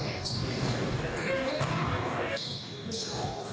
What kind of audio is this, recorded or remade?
remade